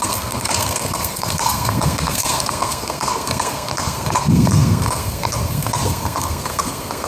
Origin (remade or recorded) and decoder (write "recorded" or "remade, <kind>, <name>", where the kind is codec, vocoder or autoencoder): remade, codec, SNAC